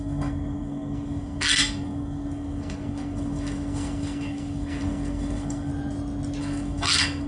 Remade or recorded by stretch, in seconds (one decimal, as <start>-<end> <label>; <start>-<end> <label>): 0.0-5.7 remade; 5.7-6.4 recorded; 6.4-7.3 remade